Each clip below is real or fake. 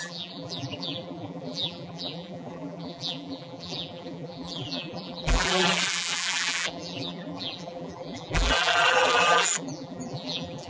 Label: fake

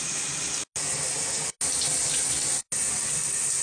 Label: real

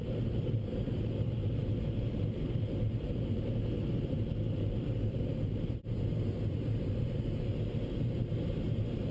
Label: fake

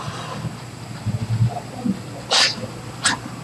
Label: real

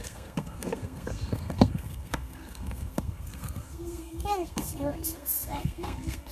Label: fake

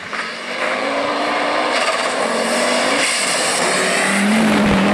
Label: fake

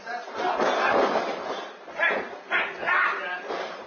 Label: real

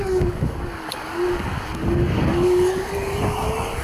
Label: fake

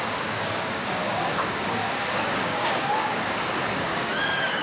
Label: fake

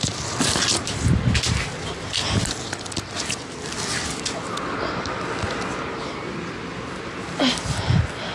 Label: real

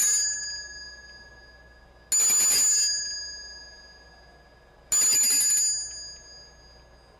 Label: real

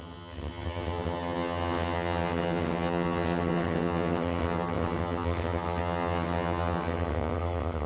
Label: fake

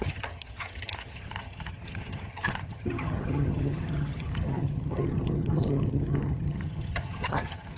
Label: fake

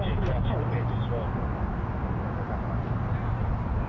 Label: real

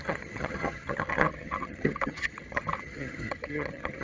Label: fake